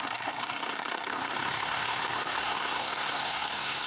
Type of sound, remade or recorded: remade